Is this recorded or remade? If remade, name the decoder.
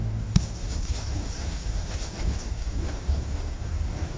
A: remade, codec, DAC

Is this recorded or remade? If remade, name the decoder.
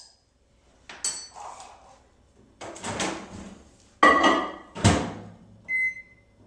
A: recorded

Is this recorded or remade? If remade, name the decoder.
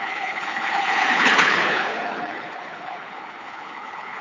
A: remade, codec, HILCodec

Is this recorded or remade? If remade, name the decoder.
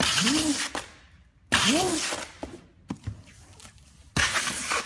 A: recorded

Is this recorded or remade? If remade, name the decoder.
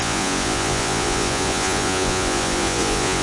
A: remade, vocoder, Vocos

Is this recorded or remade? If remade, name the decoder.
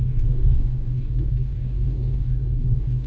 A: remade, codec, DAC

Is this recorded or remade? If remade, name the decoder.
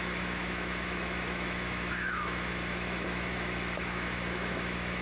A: remade, autoencoder, DAC-VAE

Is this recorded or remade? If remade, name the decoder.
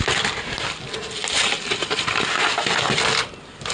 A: recorded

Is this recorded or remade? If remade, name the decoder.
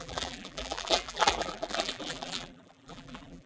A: remade, vocoder, BigVGAN v2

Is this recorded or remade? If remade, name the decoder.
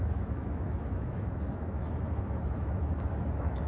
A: remade, autoencoder, DAC-VAE